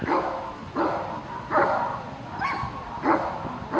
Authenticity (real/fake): real